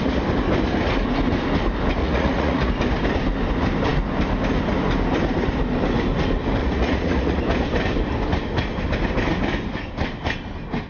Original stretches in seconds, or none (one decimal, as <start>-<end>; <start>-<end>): 0.0-2.0; 2.7-6.6; 7.4-10.9